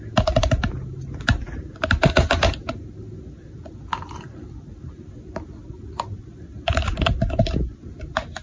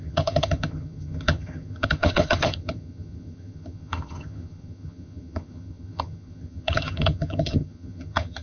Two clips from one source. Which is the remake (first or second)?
second